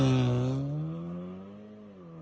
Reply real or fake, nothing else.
real